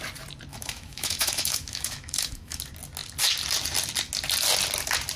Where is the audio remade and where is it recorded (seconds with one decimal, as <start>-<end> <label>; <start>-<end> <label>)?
0.0-0.5 recorded; 0.5-2.6 remade; 2.6-5.2 recorded